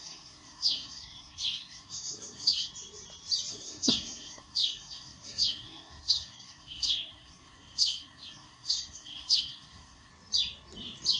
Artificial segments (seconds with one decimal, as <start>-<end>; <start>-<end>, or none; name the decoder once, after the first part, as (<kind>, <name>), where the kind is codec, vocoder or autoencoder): 0.0-2.7 (codec, SNAC); 3.5-10.1